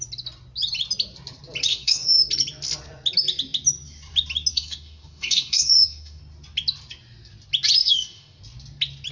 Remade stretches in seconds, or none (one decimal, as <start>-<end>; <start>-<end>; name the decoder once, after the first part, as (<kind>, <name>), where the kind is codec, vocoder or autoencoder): 1.7-2.3 (autoencoder, DAC-VAE); 4.5-6.2; 7.8-8.4